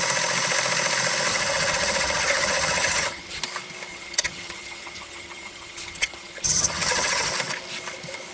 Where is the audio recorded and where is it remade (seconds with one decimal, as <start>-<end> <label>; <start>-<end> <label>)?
0.0-1.3 recorded; 1.3-3.4 remade; 3.4-3.9 recorded; 3.9-7.3 remade; 7.3-8.3 recorded